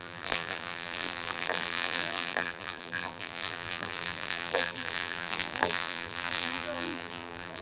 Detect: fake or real fake